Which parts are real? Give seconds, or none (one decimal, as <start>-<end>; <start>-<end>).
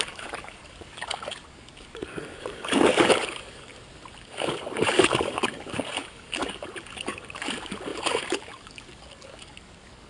3.7-4.2